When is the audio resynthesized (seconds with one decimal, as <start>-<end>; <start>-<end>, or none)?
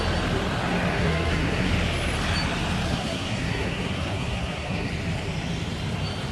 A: 0.9-1.7; 2.9-4.9